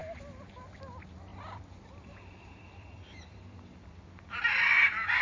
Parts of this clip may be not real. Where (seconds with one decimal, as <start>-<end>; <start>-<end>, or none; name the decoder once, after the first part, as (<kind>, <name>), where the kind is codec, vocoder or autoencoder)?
0.0-0.6 (vocoder, BigVGAN v2); 1.3-4.4